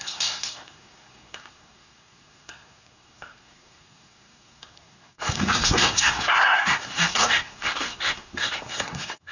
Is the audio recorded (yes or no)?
no